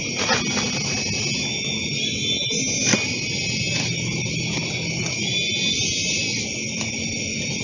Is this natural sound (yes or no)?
yes